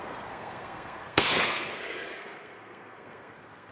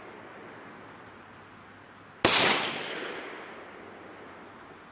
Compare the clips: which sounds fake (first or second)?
first